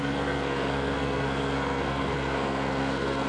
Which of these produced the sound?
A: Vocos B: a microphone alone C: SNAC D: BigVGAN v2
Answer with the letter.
C